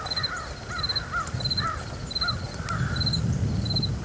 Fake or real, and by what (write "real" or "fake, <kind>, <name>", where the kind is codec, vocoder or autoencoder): real